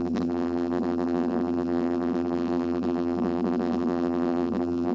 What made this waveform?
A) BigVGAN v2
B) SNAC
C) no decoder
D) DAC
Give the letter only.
A